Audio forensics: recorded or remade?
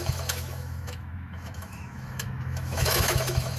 remade